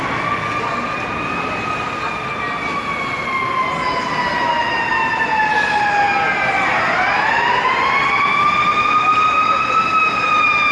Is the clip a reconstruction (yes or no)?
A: no